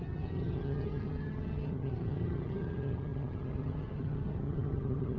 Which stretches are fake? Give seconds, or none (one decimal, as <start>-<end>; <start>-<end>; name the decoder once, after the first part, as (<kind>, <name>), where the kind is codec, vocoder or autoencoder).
0.0-5.2 (vocoder, HiFi-GAN)